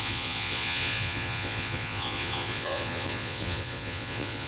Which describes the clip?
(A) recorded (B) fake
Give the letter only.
B